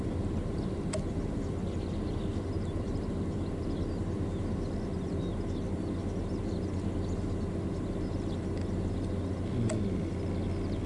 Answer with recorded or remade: recorded